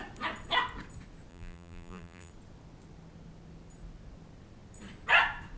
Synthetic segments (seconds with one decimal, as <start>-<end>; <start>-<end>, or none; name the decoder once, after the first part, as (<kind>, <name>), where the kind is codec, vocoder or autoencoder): 1.3-2.3 (vocoder, BigVGAN v2)